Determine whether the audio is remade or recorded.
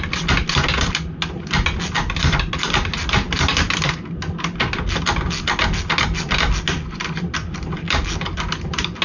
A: recorded